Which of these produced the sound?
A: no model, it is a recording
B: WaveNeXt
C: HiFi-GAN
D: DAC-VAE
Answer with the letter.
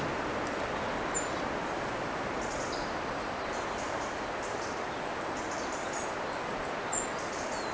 A